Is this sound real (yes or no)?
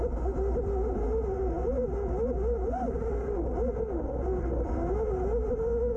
yes